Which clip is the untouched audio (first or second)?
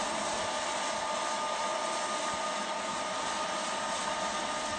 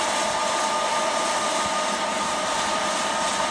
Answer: first